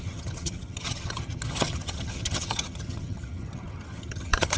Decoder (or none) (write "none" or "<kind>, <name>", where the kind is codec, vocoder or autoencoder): vocoder, HiFi-GAN